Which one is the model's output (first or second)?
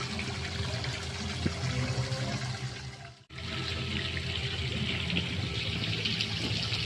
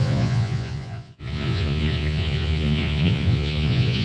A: second